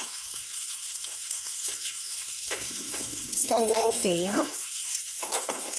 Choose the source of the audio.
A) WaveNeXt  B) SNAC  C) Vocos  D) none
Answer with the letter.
B